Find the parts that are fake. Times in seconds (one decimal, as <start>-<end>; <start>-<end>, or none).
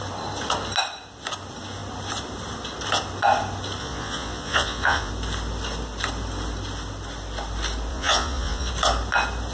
3.8-5.1; 7.9-8.7